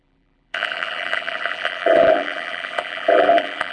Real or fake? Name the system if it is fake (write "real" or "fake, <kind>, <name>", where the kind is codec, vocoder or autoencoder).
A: fake, vocoder, BigVGAN v2